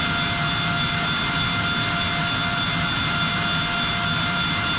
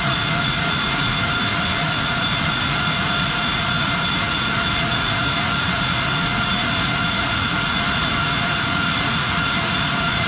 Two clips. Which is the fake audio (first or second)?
second